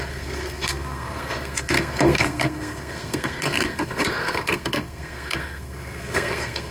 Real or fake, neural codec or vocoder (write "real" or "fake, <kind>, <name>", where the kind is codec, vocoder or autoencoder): fake, codec, SNAC